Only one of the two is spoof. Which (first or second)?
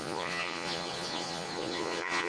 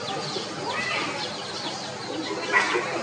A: first